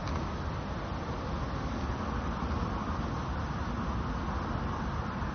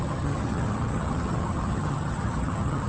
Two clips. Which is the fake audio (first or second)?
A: second